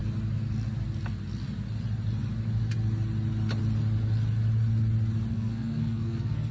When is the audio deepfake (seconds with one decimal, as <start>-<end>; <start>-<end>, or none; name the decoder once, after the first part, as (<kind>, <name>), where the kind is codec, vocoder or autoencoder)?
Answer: 5.3-6.5 (codec, SNAC)

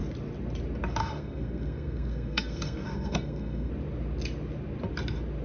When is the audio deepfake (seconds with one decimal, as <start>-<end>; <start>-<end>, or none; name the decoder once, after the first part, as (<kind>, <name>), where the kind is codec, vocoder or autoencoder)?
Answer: 1.0-3.7 (codec, SNAC)

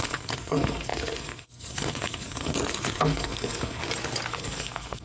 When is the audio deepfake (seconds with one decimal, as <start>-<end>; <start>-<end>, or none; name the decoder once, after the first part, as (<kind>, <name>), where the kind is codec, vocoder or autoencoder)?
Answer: 0.0-3.8 (codec, SNAC); 4.3-5.0

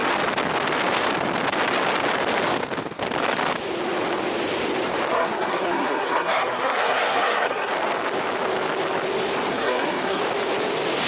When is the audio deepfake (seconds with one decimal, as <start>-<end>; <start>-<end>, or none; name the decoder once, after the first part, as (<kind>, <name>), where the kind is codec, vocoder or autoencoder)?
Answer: 5.1-7.7 (codec, SNAC); 9.5-10.2

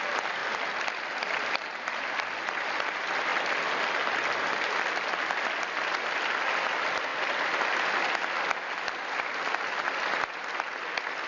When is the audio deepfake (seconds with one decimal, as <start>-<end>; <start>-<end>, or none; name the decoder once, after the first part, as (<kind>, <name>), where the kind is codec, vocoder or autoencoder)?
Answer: none

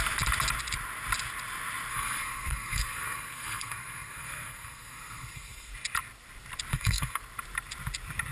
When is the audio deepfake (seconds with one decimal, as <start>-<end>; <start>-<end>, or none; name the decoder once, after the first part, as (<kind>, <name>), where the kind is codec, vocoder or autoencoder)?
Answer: 1.9-5.7 (codec, SNAC); 6.7-7.2

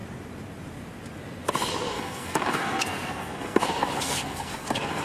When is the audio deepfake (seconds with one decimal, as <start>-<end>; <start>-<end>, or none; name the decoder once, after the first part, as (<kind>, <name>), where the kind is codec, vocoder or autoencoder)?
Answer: 1.9-5.0 (codec, SNAC)

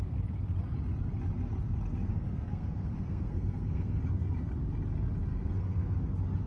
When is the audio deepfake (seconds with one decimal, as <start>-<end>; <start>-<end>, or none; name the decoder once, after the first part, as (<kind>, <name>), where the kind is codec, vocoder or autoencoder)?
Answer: 2.1-4.0 (codec, SNAC); 5.3-6.1